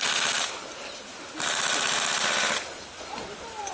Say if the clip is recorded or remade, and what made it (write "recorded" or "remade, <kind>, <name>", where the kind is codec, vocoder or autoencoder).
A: recorded